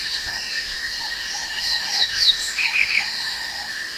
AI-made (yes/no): yes